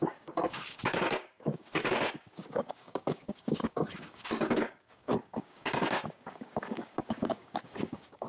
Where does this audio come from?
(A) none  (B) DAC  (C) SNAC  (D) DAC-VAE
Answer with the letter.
B